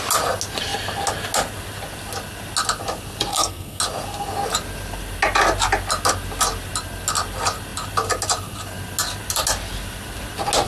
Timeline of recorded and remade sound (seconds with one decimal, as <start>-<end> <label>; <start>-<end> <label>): 0.0-3.3 recorded; 3.3-3.8 remade; 3.8-10.7 recorded